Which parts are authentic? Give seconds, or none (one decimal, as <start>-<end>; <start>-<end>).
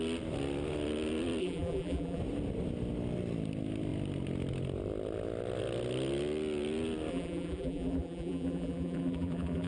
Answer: 0.0-1.4; 2.2-7.1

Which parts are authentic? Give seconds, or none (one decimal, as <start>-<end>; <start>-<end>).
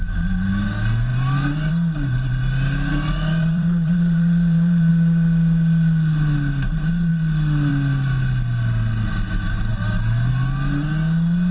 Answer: 0.0-1.1; 1.7-2.9; 4.9-11.5